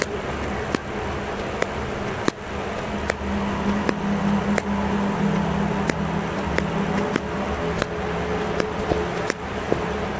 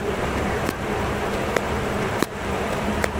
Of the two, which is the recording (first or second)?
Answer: first